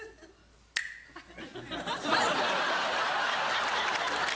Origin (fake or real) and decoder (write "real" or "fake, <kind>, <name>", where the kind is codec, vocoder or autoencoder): real